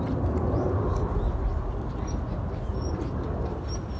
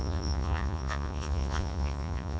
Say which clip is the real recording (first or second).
first